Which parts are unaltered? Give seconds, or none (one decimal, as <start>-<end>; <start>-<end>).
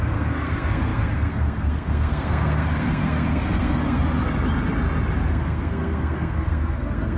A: 4.0-5.3